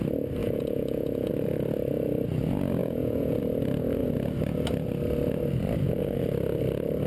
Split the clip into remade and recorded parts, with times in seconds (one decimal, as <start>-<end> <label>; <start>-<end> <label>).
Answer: 0.0-0.4 recorded; 0.4-1.3 remade; 1.3-2.8 recorded; 2.8-3.4 remade; 3.4-7.1 recorded